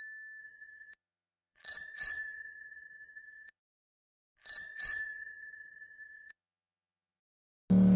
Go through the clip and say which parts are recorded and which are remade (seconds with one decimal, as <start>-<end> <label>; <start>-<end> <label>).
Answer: 0.0-0.4 recorded; 0.4-3.6 remade; 3.6-4.6 recorded; 4.6-7.2 remade; 7.2-8.0 recorded